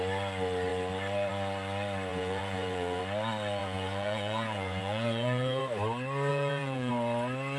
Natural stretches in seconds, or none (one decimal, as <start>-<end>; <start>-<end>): 0.0-2.1; 3.0-3.6; 5.6-6.3; 6.9-7.6